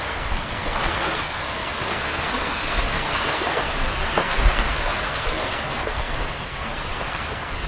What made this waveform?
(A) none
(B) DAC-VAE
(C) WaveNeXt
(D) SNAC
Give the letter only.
D